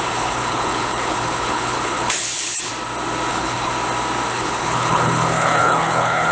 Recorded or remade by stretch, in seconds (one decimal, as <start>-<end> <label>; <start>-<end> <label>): 0.0-2.7 remade; 2.7-3.3 recorded; 3.3-3.7 remade; 3.7-4.3 recorded; 4.3-6.3 remade